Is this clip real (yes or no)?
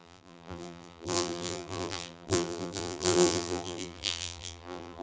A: no